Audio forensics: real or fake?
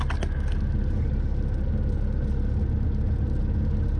real